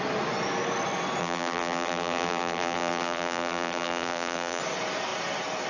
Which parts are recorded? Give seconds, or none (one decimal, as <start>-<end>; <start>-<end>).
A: 0.0-1.2; 4.6-5.7